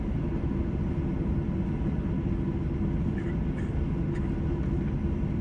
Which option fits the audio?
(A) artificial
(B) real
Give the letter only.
B